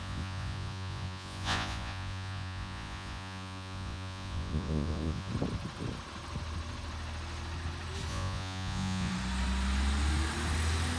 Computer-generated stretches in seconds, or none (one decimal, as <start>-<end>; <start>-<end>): 0.0-5.3; 8.1-9.1